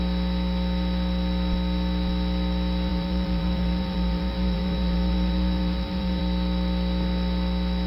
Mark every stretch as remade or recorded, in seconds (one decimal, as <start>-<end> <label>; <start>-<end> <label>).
0.0-2.9 recorded; 2.9-6.2 remade; 6.2-7.9 recorded